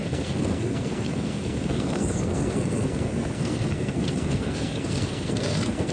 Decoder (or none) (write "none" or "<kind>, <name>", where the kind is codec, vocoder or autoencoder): codec, SNAC